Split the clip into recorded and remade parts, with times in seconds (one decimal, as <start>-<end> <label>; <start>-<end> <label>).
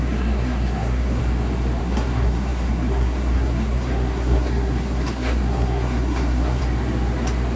0.0-1.2 remade; 1.2-1.8 recorded; 1.8-6.6 remade; 6.6-7.6 recorded